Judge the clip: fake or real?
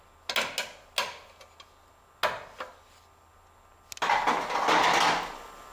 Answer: real